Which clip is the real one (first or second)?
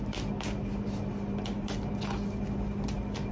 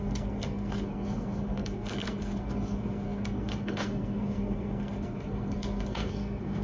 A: first